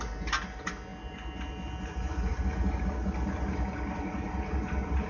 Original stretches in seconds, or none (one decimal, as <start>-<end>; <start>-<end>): 0.0-5.1